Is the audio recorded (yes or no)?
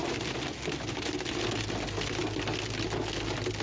yes